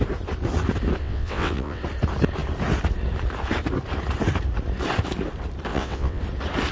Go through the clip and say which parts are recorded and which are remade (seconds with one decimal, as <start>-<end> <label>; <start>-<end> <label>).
0.0-1.0 recorded; 1.0-1.8 remade; 1.8-5.7 recorded; 5.7-6.2 remade; 6.2-6.7 recorded